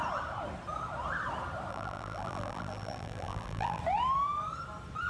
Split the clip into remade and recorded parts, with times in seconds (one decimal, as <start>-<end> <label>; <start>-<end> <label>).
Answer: 0.0-1.7 recorded; 1.7-3.8 remade; 3.8-5.1 recorded